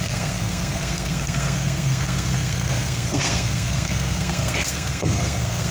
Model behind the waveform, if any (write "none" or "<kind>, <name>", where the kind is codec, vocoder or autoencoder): codec, SNAC